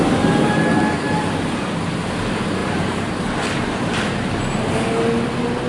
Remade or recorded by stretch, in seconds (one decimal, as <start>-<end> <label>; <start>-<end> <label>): 0.0-2.6 recorded; 2.6-4.5 remade; 4.5-5.7 recorded